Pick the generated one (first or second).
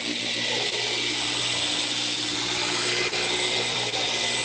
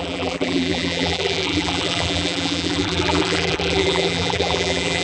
second